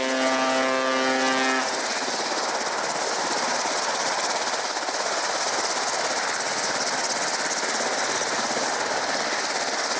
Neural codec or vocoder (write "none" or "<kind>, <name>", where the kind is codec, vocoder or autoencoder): none